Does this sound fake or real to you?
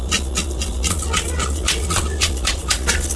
fake